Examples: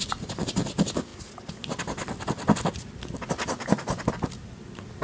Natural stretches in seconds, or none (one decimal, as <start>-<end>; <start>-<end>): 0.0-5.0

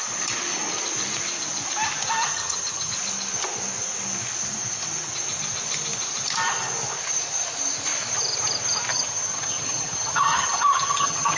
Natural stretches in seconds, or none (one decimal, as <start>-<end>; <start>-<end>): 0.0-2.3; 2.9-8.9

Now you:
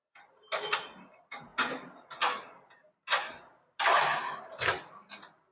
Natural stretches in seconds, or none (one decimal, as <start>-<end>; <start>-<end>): 0.0-5.5

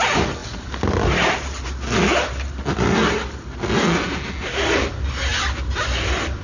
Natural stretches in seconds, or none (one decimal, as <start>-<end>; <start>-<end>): 0.0-6.4

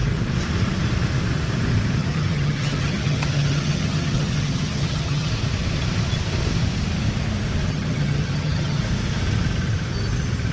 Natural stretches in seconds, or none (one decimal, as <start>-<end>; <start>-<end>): 0.0-2.0; 5.3-7.7; 8.8-10.5

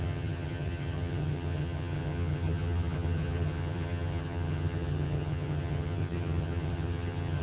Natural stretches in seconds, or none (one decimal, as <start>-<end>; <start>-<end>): none